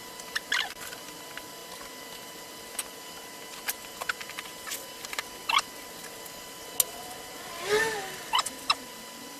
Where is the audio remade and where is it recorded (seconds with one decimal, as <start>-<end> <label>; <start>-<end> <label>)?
0.0-9.4 recorded